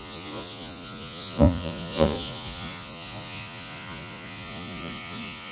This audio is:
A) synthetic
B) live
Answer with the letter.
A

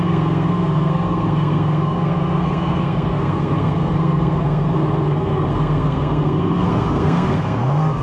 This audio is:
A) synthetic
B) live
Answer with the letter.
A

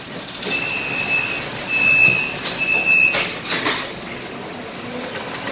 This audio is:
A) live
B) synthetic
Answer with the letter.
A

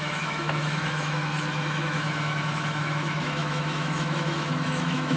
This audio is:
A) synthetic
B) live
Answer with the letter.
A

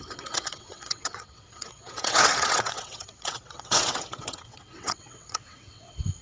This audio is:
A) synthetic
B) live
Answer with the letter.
A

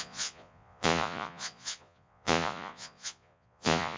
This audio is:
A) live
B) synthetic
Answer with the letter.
B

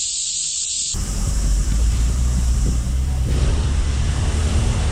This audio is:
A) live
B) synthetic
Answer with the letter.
B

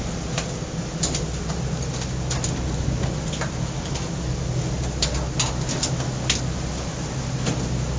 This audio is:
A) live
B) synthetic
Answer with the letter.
A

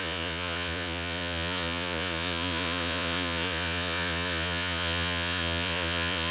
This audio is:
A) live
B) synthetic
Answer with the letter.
B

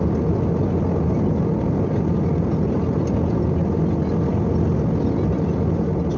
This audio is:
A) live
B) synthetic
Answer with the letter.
A